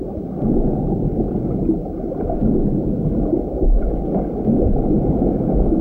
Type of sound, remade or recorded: recorded